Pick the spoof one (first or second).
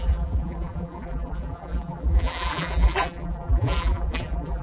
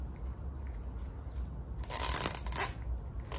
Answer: first